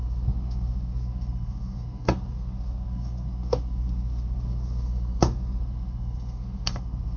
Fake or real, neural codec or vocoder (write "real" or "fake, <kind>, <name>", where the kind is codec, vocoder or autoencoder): fake, codec, SNAC